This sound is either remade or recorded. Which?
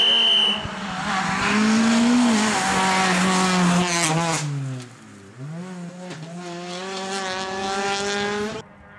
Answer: recorded